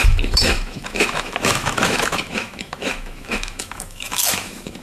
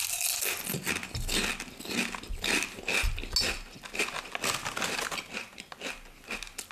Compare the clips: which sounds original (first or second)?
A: second